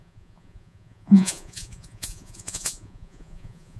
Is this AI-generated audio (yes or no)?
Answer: yes